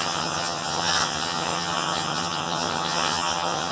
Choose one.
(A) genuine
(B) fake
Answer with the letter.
B